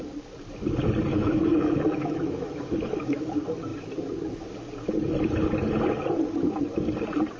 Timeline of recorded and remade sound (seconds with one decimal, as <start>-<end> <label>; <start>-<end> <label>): 0.0-1.1 recorded; 1.1-3.3 remade; 3.3-7.4 recorded